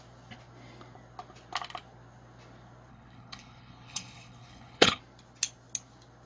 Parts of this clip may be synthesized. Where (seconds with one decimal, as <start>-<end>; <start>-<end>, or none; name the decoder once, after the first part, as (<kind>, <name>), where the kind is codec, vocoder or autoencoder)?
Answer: 2.9-5.0 (codec, HILCodec)